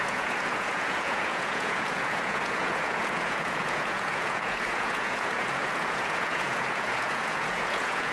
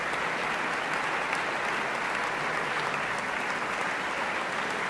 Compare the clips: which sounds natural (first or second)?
second